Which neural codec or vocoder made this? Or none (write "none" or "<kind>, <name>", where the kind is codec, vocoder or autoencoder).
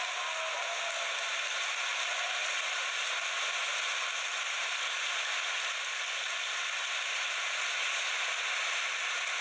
none